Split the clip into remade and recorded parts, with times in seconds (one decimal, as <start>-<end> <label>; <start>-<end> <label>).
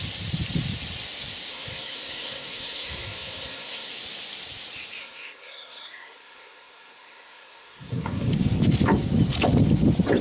0.0-1.5 recorded; 1.5-3.9 remade; 3.9-5.0 recorded; 5.0-8.3 remade; 8.3-10.2 recorded